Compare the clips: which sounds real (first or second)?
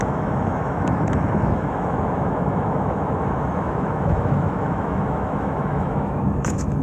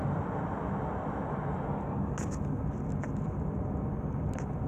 second